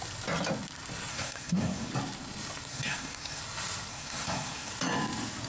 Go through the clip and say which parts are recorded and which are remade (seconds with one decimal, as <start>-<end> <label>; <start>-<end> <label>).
0.0-1.1 recorded; 1.1-1.9 remade; 1.9-2.7 recorded; 2.7-3.4 remade; 3.4-3.9 recorded; 3.9-4.7 remade; 4.7-5.5 recorded